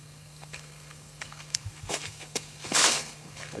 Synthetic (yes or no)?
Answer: yes